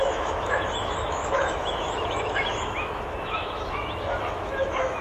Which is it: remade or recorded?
remade